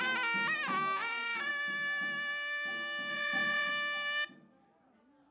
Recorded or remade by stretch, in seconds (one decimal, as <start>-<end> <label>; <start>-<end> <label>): 0.0-1.0 recorded; 1.0-1.5 remade; 1.5-3.1 recorded; 3.1-3.7 remade; 3.7-5.3 recorded